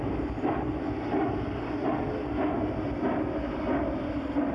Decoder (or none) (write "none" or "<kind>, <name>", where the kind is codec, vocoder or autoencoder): none